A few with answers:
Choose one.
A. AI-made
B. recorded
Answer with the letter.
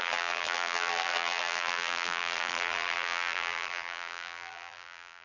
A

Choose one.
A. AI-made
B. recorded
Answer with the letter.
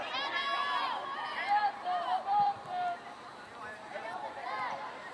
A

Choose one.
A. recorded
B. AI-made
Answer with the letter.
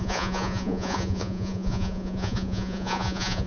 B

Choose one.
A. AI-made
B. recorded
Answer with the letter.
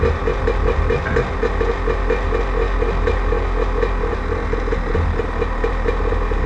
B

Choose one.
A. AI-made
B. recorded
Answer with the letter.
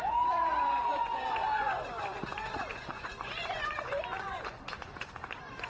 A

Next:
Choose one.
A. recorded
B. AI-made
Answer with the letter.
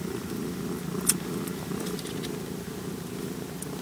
A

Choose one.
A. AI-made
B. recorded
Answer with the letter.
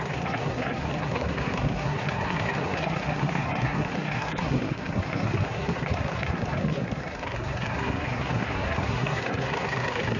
A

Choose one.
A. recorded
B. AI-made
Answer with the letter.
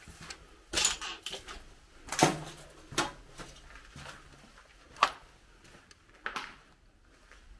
A